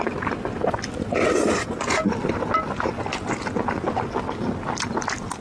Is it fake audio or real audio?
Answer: real